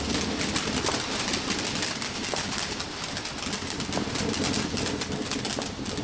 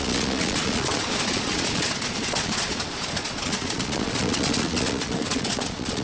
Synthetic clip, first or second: second